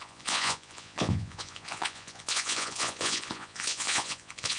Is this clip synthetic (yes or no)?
yes